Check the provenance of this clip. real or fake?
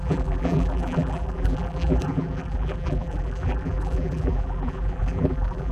fake